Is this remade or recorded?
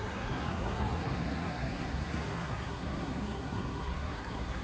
remade